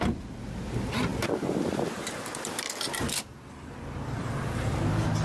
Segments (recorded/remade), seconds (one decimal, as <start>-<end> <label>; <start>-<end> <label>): 0.0-5.2 recorded